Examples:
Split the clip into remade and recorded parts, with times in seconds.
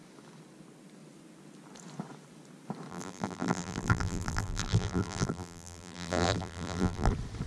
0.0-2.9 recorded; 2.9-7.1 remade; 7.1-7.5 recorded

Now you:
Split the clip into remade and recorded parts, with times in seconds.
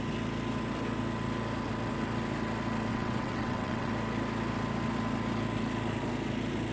0.0-2.9 recorded; 2.9-3.9 remade; 3.9-6.7 recorded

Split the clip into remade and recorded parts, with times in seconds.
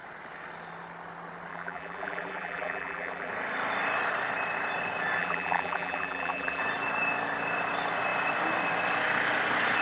0.0-1.5 recorded; 1.5-3.3 remade; 3.3-5.2 recorded; 5.2-6.6 remade; 6.6-9.8 recorded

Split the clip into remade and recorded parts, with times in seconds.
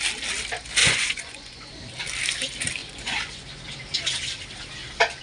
0.0-0.8 recorded; 0.8-1.7 remade; 1.7-2.8 recorded; 2.8-3.6 remade; 3.6-5.2 recorded